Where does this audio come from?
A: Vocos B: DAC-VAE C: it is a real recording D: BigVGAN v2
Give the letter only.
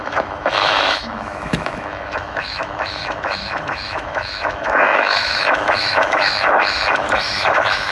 B